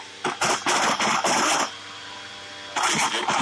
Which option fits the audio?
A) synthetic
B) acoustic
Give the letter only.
B